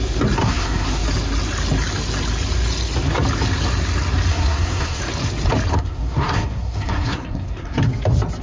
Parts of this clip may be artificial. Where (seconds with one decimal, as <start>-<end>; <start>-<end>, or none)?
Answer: 0.4-1.0; 4.3-5.0; 5.7-7.8